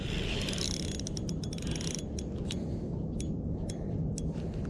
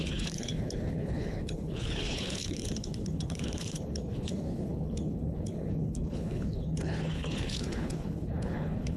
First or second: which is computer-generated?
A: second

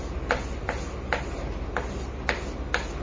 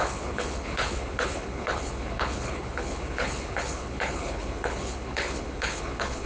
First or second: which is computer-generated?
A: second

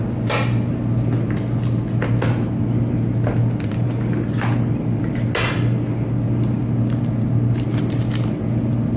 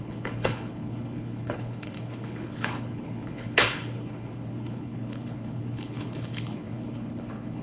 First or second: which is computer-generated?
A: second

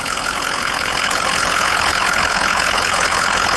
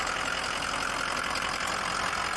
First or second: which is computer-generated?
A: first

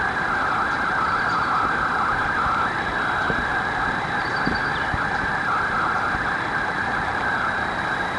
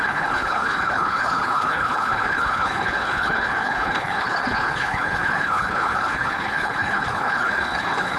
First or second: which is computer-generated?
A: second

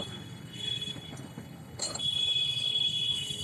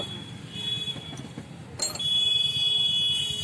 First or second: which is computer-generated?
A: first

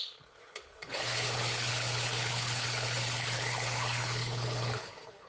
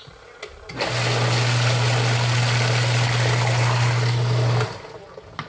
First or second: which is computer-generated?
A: first